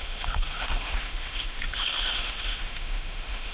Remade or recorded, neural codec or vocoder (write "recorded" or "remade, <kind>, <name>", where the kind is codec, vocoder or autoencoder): remade, autoencoder, DAC-VAE